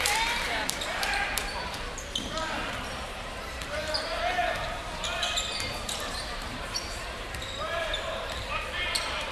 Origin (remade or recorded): remade